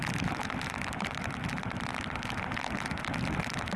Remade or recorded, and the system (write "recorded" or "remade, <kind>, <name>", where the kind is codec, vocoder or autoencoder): remade, vocoder, BigVGAN v2